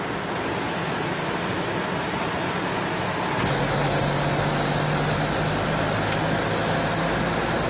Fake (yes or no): no